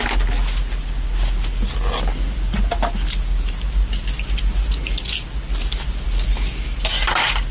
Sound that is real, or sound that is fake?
real